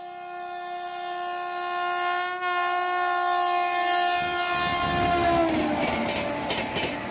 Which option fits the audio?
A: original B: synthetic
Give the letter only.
A